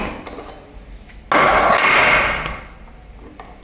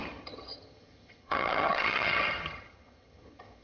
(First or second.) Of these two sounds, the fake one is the second